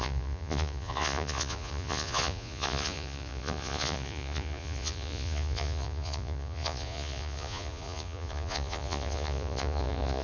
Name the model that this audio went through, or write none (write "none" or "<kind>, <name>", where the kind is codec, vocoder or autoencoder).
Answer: vocoder, Vocos